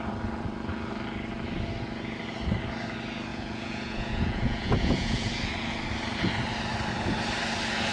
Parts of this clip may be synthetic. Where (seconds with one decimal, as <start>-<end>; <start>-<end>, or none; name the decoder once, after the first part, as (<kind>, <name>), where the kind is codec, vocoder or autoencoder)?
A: 3.3-5.3 (vocoder, Vocos)